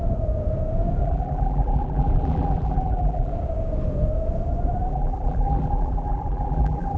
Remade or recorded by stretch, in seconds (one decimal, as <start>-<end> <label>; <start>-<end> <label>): 0.0-1.0 recorded; 1.0-3.3 remade; 3.3-4.9 recorded; 4.9-7.0 remade